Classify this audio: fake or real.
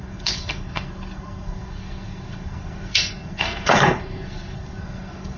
fake